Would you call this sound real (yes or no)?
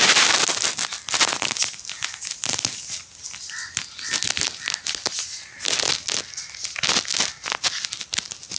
yes